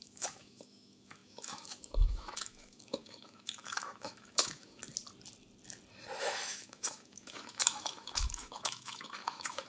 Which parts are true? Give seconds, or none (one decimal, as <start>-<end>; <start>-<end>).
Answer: 4.8-6.2

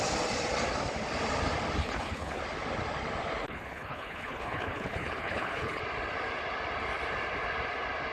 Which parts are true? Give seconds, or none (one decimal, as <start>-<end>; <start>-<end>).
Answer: 0.0-1.8; 2.4-3.4; 5.8-8.1

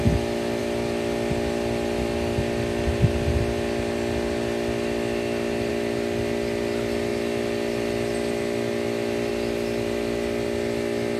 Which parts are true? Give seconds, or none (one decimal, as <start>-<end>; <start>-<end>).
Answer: 0.0-11.2

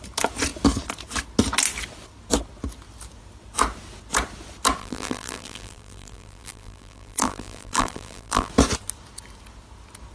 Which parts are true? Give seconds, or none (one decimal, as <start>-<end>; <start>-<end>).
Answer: 0.0-4.8; 8.5-10.1

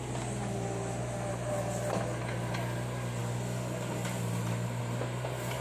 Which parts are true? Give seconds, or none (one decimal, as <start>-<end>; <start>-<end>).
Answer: 0.0-5.6